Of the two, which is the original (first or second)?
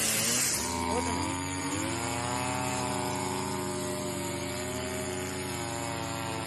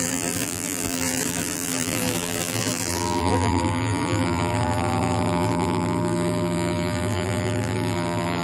first